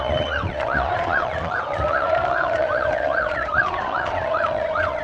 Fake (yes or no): yes